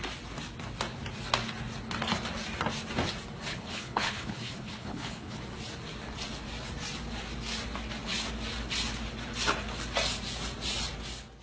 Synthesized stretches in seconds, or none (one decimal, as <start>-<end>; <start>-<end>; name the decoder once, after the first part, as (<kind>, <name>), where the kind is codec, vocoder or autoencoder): 3.5-5.4 (codec, HILCodec)